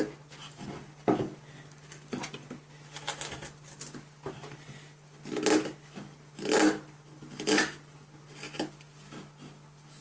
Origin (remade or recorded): recorded